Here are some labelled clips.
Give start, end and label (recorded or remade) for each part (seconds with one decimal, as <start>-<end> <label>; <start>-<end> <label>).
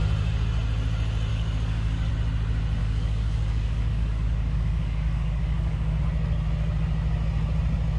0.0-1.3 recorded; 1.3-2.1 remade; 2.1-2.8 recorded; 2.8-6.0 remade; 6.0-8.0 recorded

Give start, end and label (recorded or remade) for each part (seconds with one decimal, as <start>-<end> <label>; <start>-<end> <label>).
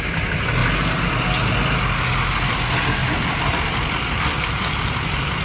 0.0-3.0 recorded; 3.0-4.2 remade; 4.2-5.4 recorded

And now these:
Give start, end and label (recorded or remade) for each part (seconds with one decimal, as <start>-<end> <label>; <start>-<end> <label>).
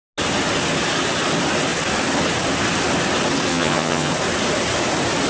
0.0-3.5 recorded; 3.5-4.1 remade; 4.1-5.3 recorded